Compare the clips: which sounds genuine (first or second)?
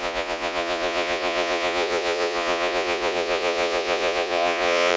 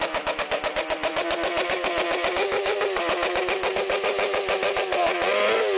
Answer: second